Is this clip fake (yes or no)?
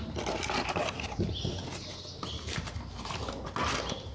no